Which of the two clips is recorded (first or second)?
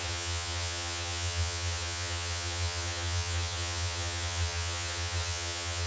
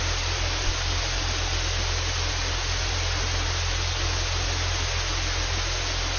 second